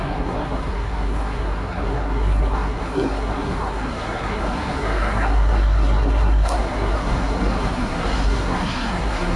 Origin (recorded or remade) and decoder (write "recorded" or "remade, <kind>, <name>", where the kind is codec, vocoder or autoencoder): remade, codec, SNAC